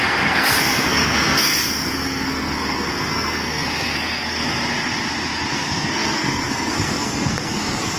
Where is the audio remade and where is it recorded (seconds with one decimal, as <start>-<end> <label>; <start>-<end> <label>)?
0.0-4.4 remade; 4.4-5.5 recorded; 5.5-8.0 remade